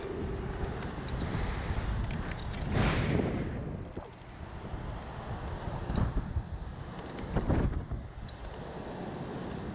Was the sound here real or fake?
real